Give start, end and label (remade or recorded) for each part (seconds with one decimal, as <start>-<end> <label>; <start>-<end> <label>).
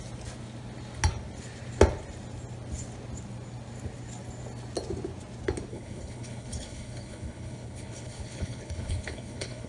0.0-5.7 recorded; 5.7-9.7 remade